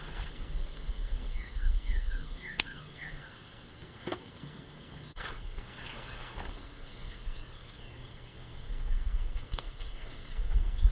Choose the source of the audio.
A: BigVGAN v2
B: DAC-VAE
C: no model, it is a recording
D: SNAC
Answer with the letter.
D